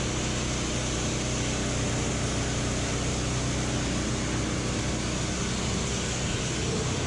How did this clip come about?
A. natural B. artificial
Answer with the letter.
A